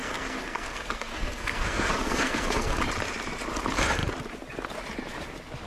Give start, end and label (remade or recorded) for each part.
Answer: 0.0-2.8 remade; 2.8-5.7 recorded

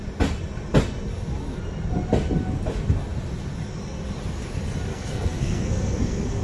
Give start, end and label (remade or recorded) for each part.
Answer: 0.0-4.9 recorded; 4.9-6.4 remade

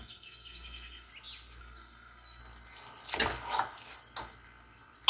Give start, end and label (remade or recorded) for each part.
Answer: 0.0-1.1 remade; 1.1-1.6 recorded; 1.6-2.4 remade; 2.4-5.1 recorded

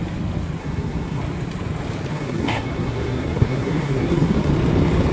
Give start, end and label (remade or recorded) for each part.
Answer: 0.0-0.6 recorded; 0.6-1.2 remade; 1.2-2.1 recorded; 2.1-4.5 remade; 4.5-5.1 recorded

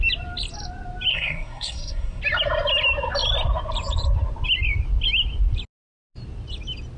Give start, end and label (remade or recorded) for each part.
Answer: 0.0-1.1 recorded; 1.1-2.2 remade; 2.2-7.0 recorded